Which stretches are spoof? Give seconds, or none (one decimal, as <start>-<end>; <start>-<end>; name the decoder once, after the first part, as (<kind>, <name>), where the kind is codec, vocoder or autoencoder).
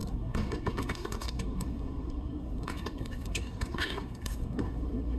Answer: 0.0-5.2 (codec, SNAC)